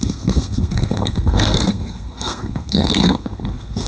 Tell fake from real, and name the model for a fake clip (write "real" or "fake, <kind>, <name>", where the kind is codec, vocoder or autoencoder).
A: fake, codec, SNAC